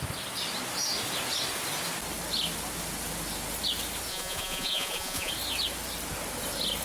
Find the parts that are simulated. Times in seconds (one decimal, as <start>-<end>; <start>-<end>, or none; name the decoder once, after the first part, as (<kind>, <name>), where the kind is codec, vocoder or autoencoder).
4.1-5.3 (vocoder, Vocos)